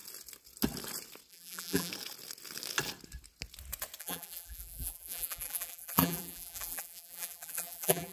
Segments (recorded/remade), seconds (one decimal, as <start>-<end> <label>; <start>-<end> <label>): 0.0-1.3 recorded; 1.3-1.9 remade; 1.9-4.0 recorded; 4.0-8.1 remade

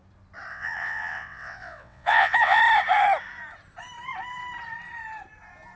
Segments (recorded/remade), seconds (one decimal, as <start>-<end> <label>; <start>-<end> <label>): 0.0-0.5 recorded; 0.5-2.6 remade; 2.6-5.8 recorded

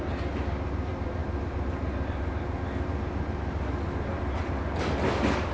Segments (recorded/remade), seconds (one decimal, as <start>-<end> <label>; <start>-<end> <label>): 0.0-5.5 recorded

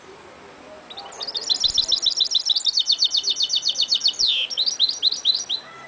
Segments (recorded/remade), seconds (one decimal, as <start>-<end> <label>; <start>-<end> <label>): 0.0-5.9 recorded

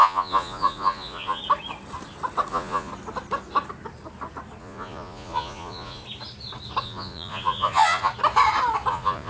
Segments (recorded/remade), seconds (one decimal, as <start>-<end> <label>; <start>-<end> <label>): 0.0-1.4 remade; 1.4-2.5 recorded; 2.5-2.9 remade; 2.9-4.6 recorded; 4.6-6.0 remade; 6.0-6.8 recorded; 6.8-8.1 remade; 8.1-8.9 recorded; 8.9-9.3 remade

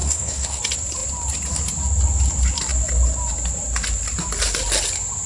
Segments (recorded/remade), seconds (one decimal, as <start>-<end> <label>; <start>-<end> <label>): 0.0-0.6 remade; 0.6-5.3 recorded